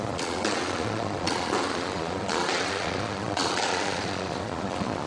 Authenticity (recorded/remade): remade